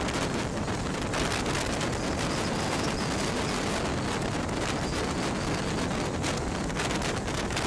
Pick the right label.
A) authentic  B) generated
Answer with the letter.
A